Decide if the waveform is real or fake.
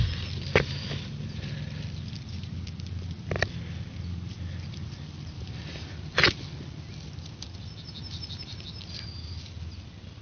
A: real